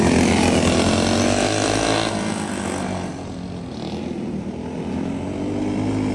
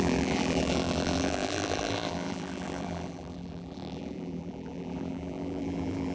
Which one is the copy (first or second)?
second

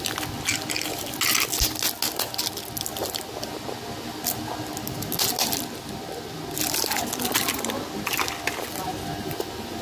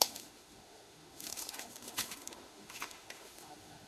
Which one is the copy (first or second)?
second